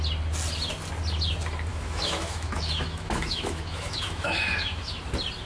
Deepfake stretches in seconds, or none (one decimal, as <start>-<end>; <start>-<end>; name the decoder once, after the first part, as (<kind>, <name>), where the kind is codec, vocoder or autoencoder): 1.7-5.0 (autoencoder, DAC-VAE)

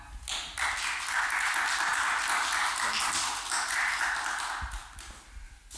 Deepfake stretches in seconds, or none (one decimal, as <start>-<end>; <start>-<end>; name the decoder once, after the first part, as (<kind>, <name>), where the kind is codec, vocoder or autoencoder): none

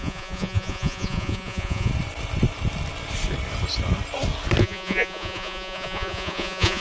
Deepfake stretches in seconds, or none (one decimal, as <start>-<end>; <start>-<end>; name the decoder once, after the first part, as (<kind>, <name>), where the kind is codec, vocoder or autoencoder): 0.0-1.9 (vocoder, Vocos); 4.6-6.8

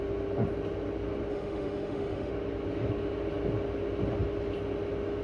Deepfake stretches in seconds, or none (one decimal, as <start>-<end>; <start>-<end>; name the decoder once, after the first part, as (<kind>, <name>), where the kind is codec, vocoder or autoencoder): 1.3-2.3 (autoencoder, DAC-VAE)

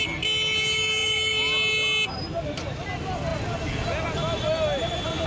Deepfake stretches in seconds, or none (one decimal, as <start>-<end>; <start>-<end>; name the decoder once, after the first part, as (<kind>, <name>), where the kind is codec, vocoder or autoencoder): none

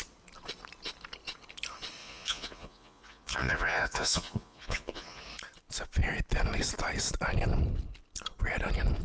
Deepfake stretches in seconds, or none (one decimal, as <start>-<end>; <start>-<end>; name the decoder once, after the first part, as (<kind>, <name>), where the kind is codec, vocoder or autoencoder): 2.0-5.2 (vocoder, Vocos)

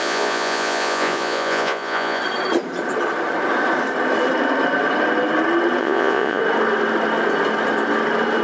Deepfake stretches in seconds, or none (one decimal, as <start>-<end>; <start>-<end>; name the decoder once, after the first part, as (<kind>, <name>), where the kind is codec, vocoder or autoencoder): 0.0-2.2 (vocoder, Vocos); 5.8-6.4